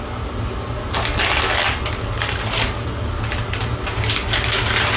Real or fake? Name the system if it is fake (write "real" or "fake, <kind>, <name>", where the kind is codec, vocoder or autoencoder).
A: real